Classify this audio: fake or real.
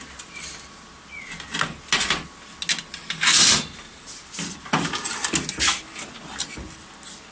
real